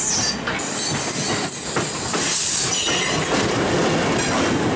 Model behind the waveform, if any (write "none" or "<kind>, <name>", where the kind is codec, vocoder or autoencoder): none